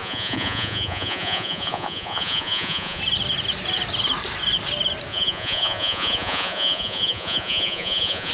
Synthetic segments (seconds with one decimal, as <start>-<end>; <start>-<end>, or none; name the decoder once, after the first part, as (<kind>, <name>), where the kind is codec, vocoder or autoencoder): 0.0-3.0 (vocoder, Vocos); 5.1-8.3

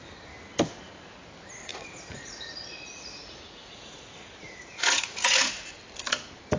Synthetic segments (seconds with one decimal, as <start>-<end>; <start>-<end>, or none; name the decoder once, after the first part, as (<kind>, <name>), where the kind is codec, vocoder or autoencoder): 1.7-5.7 (vocoder, Vocos)

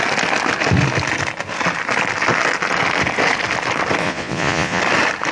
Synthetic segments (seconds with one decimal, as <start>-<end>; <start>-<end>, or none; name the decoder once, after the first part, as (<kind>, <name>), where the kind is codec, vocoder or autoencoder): 4.0-4.8 (vocoder, Vocos)

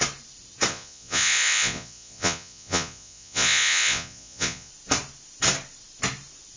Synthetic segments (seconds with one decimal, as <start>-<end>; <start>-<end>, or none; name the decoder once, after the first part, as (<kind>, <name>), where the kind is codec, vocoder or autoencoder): 0.7-4.7 (vocoder, Vocos)

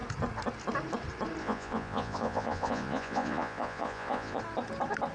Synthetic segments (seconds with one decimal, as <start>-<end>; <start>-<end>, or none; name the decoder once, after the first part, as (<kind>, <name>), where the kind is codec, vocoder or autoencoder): 1.4-4.4 (vocoder, Vocos)

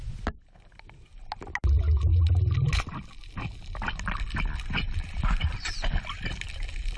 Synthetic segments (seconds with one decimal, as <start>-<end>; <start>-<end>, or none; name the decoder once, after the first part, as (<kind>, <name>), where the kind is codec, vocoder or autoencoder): none